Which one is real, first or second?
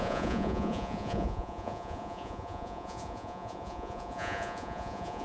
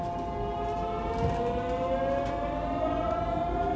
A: second